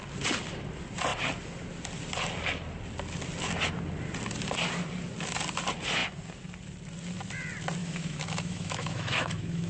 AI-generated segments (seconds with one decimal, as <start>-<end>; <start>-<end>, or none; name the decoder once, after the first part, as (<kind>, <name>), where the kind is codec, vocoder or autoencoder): 7.8-9.7 (autoencoder, DAC-VAE)

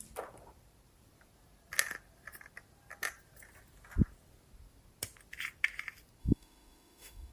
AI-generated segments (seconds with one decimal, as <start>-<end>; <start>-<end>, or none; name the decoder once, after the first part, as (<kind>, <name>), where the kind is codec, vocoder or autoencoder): 6.2-7.3 (autoencoder, DAC-VAE)

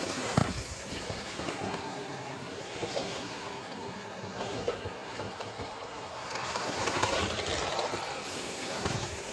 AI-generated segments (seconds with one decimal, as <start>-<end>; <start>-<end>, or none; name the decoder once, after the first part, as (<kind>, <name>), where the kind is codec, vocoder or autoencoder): 0.0-7.2 (codec, SNAC); 8.3-9.3

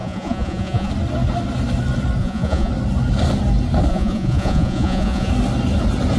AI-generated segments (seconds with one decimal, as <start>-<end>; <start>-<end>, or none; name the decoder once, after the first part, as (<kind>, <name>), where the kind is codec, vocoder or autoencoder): 0.0-0.9 (vocoder, Vocos); 2.2-2.7; 3.9-5.3

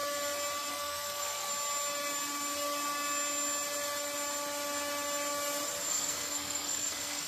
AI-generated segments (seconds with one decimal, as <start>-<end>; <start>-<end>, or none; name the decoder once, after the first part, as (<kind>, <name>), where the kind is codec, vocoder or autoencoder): 0.7-1.5 (codec, SNAC); 5.9-7.3

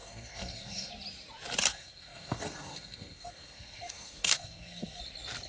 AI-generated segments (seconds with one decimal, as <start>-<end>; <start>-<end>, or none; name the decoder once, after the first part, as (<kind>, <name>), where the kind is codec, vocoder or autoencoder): 0.0-0.9 (codec, SNAC); 1.7-5.0